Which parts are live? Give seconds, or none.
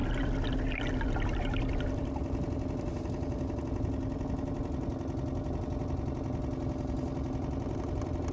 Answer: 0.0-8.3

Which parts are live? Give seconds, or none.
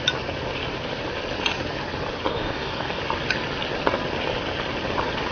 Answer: 0.0-2.3; 3.0-5.3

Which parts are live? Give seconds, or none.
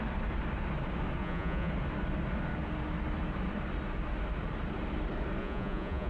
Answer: 0.0-1.2; 1.7-5.4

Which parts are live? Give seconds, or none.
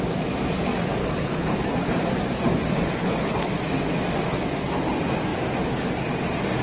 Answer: 0.0-1.0; 2.0-3.0; 3.5-6.6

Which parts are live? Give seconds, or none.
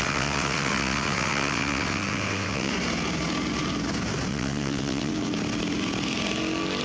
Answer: 2.7-4.3; 5.1-6.8